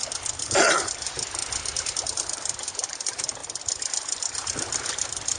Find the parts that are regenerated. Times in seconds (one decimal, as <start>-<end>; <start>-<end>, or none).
none